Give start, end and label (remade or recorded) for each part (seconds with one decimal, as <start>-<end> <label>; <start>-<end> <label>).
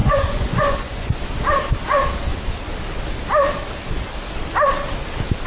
0.0-1.2 remade; 1.2-5.5 recorded